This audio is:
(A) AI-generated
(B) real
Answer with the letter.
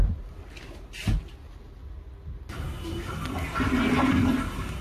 B